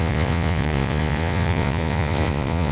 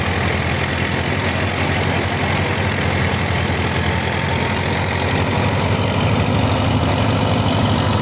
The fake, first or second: first